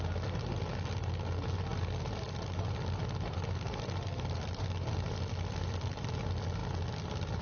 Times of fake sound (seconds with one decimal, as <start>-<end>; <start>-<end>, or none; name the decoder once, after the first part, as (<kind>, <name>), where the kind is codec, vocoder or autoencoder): 1.7-6.1 (vocoder, BigVGAN v2)